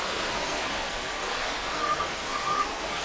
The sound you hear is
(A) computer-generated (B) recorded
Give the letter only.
A